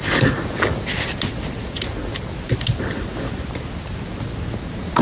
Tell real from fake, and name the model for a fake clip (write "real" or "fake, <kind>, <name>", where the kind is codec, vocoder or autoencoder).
real